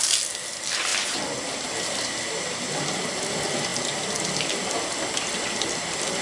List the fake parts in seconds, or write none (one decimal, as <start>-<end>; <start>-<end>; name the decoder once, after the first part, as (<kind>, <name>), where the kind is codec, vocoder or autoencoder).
none